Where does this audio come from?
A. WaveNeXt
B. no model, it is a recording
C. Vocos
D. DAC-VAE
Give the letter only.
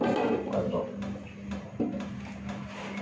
B